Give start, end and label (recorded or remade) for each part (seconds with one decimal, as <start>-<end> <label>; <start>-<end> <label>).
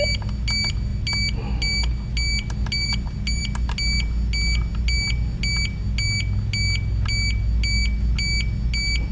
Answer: 0.0-9.1 recorded